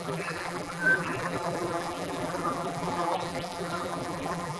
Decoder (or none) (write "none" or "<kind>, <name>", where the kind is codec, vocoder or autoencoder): vocoder, BigVGAN v2